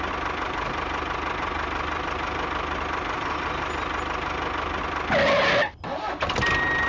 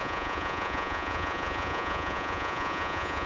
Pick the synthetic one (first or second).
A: second